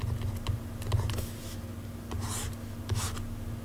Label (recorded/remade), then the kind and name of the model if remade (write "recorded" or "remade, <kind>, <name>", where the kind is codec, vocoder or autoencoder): recorded